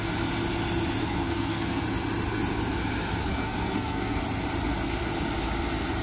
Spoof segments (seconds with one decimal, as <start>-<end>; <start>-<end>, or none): 1.0-1.8; 3.3-4.2